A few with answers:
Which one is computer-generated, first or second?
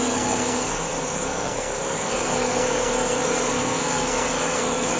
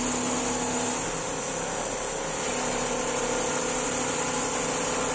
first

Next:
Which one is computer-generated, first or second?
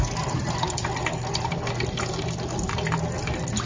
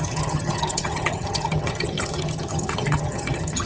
second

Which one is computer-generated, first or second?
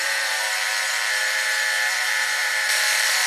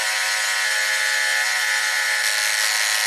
first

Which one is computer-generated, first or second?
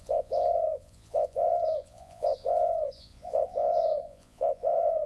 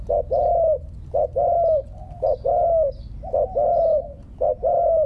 first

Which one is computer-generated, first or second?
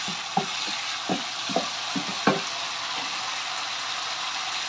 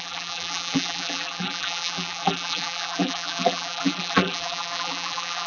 second